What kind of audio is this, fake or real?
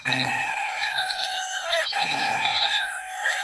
fake